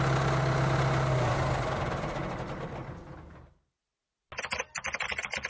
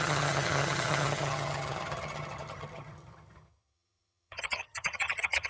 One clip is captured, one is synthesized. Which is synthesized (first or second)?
second